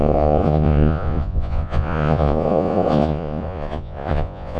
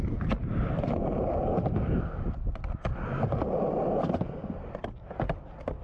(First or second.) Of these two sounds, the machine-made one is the first